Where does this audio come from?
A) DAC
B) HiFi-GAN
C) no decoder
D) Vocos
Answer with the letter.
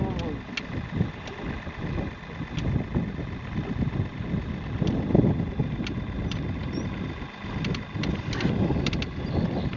C